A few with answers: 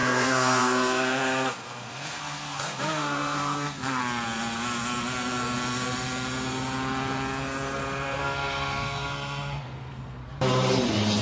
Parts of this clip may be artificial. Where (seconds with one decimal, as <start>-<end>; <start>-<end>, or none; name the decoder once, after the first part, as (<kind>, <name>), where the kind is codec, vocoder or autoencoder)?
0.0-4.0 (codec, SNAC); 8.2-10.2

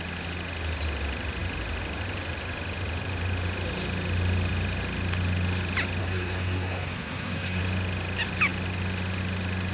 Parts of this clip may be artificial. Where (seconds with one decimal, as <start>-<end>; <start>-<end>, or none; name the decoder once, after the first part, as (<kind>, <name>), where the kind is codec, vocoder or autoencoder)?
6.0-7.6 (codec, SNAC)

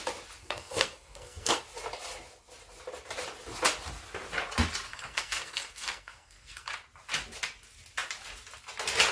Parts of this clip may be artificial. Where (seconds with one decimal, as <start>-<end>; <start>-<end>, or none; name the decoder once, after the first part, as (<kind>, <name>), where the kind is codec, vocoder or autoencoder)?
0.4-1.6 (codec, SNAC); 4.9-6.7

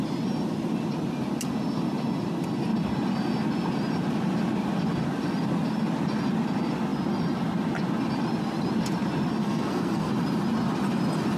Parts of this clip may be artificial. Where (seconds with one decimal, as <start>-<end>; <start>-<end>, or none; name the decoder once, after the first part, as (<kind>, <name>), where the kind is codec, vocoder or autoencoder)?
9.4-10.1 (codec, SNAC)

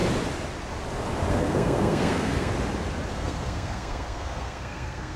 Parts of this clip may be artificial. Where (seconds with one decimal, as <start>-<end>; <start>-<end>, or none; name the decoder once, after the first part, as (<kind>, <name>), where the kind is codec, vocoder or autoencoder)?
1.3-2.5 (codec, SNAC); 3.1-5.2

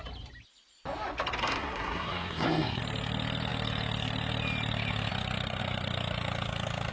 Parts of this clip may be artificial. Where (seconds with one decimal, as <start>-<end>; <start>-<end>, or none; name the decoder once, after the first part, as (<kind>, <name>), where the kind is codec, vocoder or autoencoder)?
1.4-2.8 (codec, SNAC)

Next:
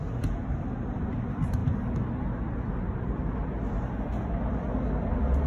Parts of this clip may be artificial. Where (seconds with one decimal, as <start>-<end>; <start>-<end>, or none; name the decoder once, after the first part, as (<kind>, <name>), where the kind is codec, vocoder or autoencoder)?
none